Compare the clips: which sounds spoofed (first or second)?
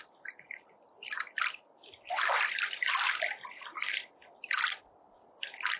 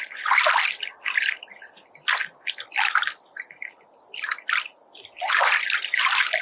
first